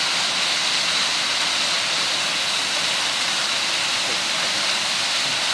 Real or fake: real